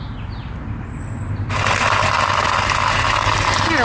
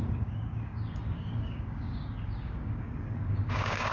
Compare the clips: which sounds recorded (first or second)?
first